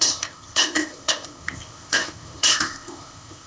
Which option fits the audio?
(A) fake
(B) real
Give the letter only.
A